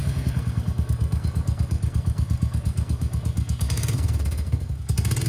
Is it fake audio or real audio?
fake